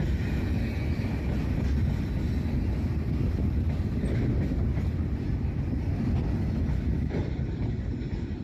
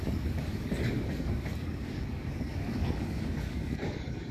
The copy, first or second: second